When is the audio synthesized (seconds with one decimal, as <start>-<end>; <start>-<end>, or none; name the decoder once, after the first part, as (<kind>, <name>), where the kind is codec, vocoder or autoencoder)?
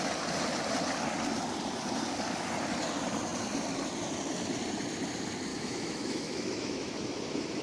5.5-7.6 (autoencoder, DAC-VAE)